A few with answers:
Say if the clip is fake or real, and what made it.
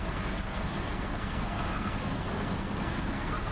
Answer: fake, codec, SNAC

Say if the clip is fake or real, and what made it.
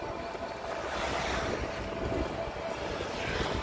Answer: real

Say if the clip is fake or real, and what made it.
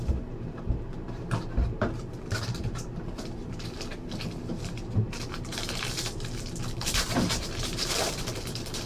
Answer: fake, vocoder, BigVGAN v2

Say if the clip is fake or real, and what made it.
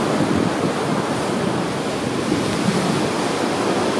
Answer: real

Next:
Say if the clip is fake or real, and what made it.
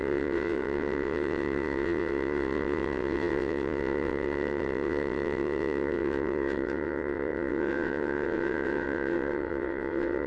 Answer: fake, vocoder, WaveNeXt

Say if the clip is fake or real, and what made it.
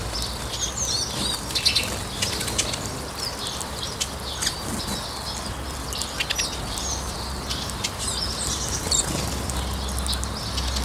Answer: real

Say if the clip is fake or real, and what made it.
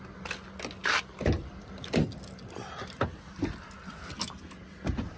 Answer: real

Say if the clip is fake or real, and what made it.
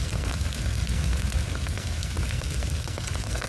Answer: fake, codec, SNAC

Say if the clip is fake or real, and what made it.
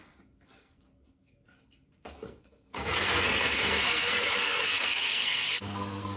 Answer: fake, codec, SNAC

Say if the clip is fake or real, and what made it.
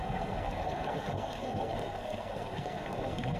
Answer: fake, codec, SNAC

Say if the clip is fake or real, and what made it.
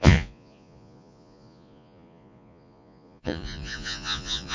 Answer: fake, vocoder, Vocos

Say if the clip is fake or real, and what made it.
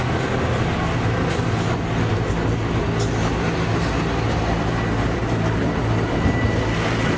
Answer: real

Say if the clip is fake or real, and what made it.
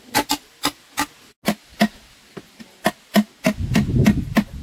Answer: real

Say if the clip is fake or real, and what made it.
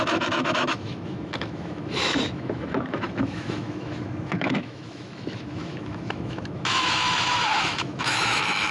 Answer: fake, autoencoder, DAC-VAE